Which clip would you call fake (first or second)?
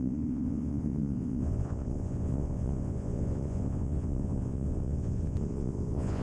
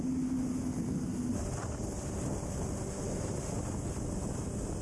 first